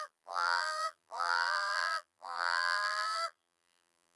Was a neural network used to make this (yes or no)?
yes